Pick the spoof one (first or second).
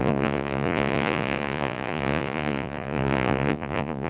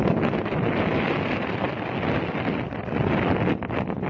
first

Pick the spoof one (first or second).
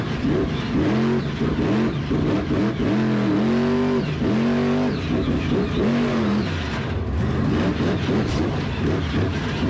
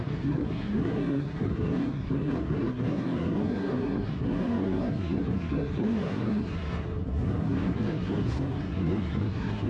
second